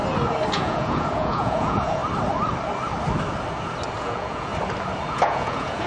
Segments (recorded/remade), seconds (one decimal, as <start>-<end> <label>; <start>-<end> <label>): 0.0-0.5 recorded; 0.5-2.0 remade; 2.0-4.0 recorded; 4.0-4.5 remade; 4.5-5.1 recorded; 5.1-5.9 remade